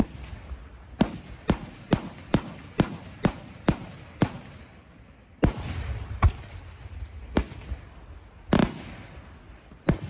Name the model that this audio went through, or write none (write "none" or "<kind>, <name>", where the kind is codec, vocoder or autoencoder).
none